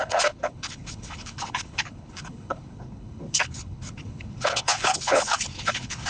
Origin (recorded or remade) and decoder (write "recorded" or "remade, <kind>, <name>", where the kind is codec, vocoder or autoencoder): remade, codec, HILCodec